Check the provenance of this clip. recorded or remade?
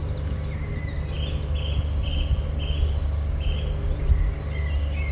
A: recorded